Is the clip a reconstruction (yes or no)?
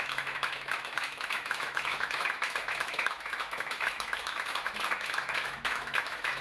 yes